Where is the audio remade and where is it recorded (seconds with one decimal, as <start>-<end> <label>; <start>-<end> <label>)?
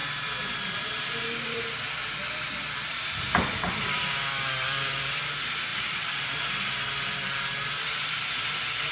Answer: 0.0-8.9 remade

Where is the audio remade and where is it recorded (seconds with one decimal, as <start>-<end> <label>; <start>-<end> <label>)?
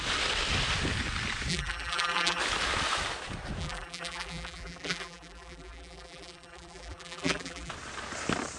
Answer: 0.0-1.5 recorded; 1.5-2.4 remade; 2.4-3.6 recorded; 3.6-7.7 remade; 7.7-8.6 recorded